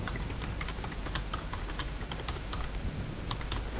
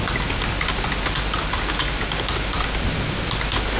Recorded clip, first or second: second